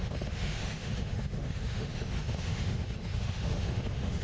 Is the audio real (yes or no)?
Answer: no